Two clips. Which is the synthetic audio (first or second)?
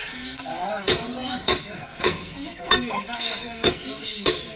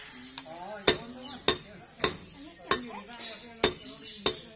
first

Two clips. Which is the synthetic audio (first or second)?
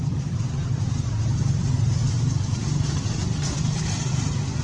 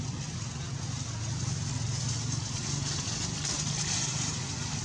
first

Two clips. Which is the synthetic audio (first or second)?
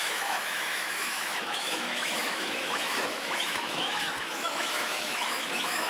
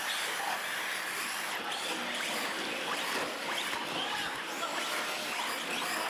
first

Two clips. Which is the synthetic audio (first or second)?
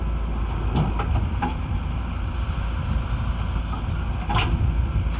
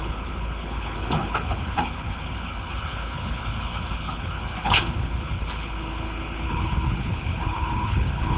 second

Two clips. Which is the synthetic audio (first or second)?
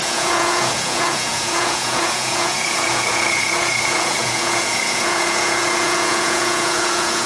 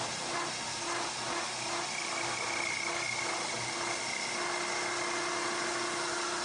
first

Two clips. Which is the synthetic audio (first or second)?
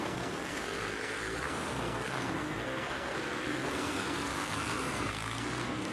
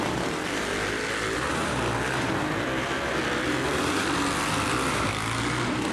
first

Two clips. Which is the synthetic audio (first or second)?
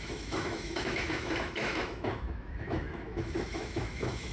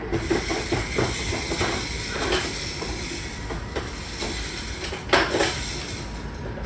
first